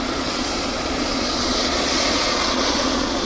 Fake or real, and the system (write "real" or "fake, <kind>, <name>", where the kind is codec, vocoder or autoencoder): fake, vocoder, Vocos